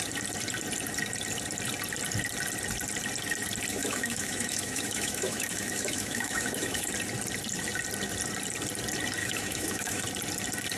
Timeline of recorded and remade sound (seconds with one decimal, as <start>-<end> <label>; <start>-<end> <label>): 0.0-3.7 recorded; 3.7-6.9 remade; 6.9-9.2 recorded; 9.2-10.0 remade; 10.0-10.8 recorded

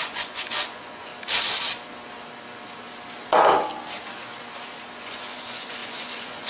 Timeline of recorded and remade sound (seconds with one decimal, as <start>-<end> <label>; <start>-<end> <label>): 0.0-1.1 remade; 1.1-5.0 recorded; 5.0-6.5 remade

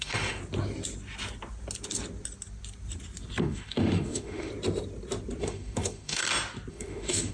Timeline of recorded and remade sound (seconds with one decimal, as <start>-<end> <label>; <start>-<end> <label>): 0.0-0.4 remade; 0.4-3.4 recorded; 3.4-4.5 remade; 4.5-5.4 recorded; 5.4-6.2 remade; 6.2-6.7 recorded; 6.7-7.3 remade